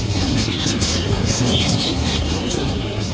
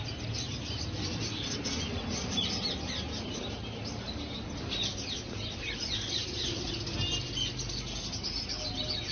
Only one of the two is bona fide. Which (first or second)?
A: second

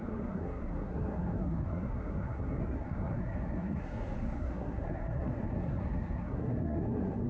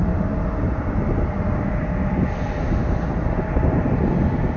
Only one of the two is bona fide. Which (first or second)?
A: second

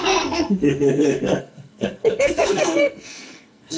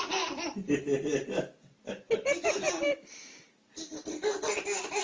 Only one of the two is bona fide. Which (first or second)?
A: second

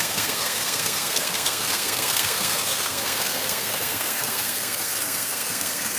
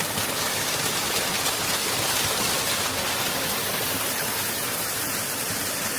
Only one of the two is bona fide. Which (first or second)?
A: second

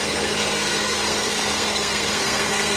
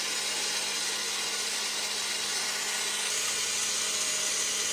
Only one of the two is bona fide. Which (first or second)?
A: second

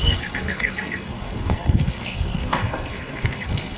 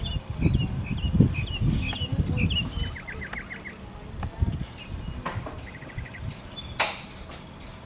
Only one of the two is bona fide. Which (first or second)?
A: second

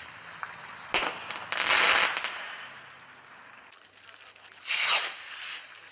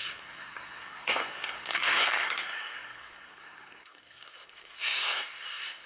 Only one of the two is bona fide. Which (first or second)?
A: first